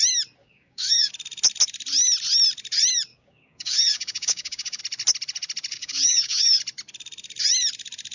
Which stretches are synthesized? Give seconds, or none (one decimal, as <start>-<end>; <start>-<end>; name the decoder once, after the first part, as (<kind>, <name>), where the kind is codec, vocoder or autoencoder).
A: 0.4-1.1 (codec, DAC); 3.1-4.8; 5.7-6.6